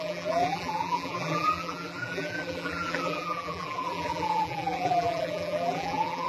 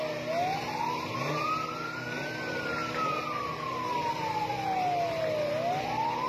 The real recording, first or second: second